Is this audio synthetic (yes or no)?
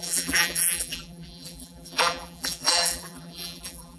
yes